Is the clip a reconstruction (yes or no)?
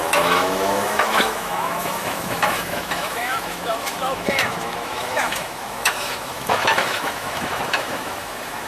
yes